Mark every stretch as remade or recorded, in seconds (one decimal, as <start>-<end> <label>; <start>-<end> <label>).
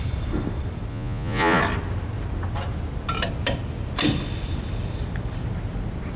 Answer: 0.0-0.9 recorded; 0.9-1.6 remade; 1.6-6.2 recorded